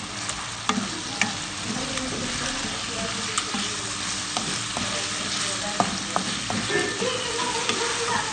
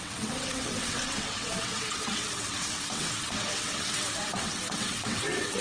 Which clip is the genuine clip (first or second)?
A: first